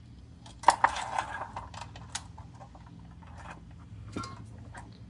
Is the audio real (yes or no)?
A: yes